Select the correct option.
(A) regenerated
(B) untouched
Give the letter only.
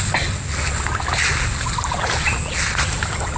B